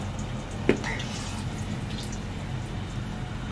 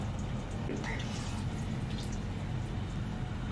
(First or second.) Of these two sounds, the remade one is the second